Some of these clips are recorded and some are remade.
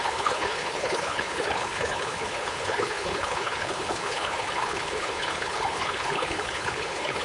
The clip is remade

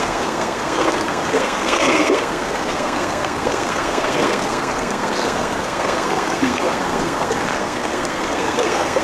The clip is remade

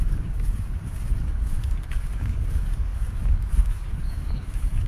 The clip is remade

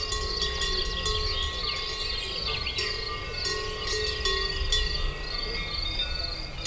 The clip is recorded